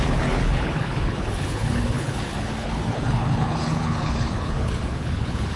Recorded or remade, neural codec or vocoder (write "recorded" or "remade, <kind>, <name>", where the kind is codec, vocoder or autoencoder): remade, codec, HILCodec